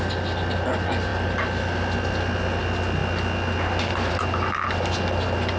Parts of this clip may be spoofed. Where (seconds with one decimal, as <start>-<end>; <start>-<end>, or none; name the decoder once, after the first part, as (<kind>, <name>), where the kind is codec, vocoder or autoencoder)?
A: none